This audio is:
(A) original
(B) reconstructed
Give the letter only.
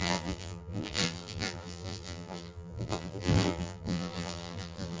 B